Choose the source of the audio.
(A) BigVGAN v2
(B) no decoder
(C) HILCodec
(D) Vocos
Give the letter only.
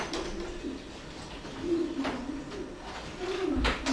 B